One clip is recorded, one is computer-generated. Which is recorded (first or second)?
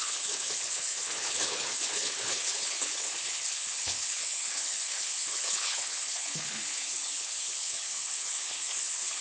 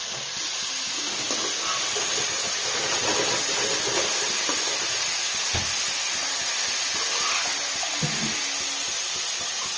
second